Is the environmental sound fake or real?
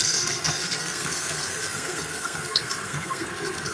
fake